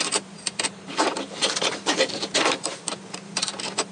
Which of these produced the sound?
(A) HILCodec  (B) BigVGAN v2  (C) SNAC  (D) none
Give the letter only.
B